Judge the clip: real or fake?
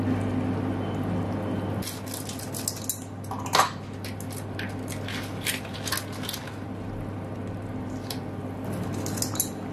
real